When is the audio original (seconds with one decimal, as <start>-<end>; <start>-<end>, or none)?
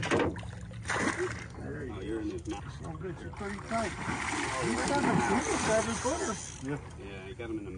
0.0-7.8